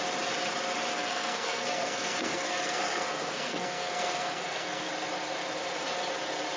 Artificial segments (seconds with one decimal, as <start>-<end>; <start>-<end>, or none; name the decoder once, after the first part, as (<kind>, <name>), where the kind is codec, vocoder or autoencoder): 0.9-4.9 (codec, SNAC)